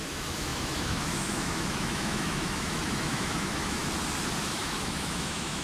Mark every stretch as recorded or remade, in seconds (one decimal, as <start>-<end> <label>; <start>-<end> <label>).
0.0-3.8 remade; 3.8-4.4 recorded; 4.4-5.6 remade